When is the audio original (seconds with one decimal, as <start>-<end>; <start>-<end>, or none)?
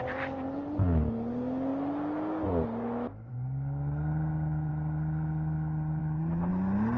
0.0-7.0